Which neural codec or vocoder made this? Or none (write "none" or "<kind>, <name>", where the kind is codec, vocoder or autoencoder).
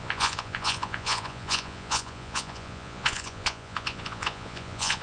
vocoder, Vocos